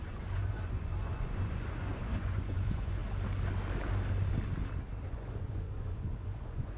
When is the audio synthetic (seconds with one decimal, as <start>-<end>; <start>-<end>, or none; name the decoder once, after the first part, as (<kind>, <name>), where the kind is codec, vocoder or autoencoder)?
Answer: 0.0-3.0 (vocoder, Vocos); 5.1-6.8